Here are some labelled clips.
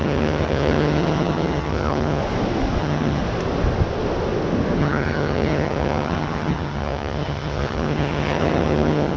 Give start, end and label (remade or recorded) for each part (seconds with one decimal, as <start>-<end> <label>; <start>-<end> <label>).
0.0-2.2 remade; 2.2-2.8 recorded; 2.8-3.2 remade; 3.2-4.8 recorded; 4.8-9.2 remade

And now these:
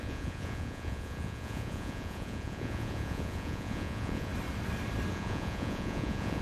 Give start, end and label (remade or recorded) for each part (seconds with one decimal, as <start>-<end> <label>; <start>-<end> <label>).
0.0-4.3 remade; 4.3-5.1 recorded; 5.1-6.4 remade

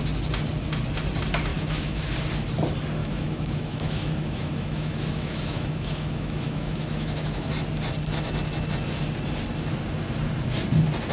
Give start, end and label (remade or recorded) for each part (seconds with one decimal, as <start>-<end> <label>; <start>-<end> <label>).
0.0-1.5 recorded; 1.5-2.0 remade; 2.0-3.0 recorded; 3.0-7.5 remade; 7.5-11.1 recorded

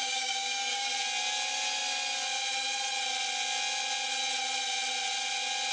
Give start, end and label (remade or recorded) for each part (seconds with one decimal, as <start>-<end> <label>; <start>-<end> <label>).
0.0-0.9 remade; 0.9-5.7 recorded

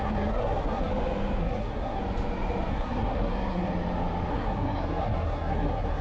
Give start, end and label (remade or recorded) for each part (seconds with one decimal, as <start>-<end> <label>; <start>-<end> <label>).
0.0-0.9 remade; 0.9-1.4 recorded; 1.4-2.0 remade; 2.0-2.7 recorded; 2.7-3.7 remade; 3.7-4.3 recorded; 4.3-6.0 remade

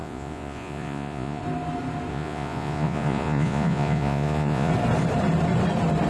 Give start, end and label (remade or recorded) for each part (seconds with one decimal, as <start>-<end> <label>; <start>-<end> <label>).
0.0-1.4 remade; 1.4-2.1 recorded; 2.1-4.7 remade; 4.7-6.1 recorded

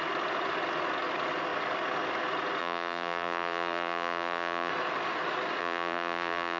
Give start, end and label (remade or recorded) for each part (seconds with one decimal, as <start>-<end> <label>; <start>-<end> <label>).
0.0-2.6 recorded; 2.6-4.7 remade; 4.7-5.6 recorded; 5.6-6.6 remade